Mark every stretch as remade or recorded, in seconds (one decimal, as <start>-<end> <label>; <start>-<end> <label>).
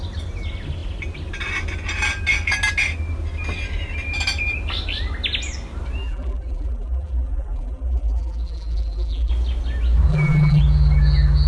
0.0-6.0 recorded; 6.0-9.3 remade; 9.3-10.1 recorded; 10.1-10.6 remade; 10.6-11.5 recorded